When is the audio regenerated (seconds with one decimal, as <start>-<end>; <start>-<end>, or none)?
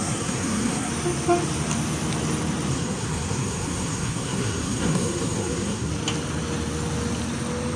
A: 0.0-0.9; 2.7-5.9